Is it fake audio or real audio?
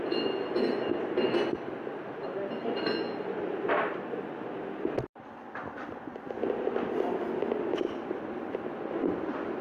real